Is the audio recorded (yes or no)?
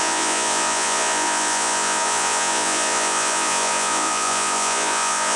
no